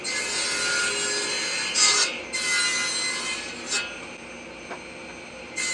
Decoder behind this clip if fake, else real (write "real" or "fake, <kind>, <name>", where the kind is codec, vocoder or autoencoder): real